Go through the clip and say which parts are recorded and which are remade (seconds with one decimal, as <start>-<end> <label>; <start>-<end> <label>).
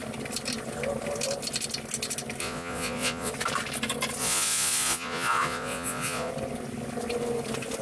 0.0-2.4 recorded; 2.4-3.3 remade; 3.3-4.2 recorded; 4.2-6.3 remade; 6.3-7.8 recorded